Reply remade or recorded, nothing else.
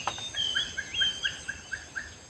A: recorded